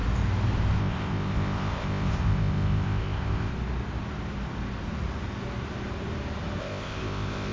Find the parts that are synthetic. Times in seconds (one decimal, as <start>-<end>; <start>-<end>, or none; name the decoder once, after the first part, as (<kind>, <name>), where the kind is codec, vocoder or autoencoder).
0.8-3.5 (codec, ZipCodec); 6.6-7.5